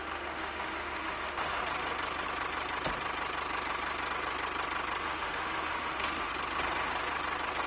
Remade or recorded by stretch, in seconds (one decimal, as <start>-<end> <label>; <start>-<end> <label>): 0.0-1.6 remade; 1.6-5.0 recorded; 5.0-6.3 remade; 6.3-7.7 recorded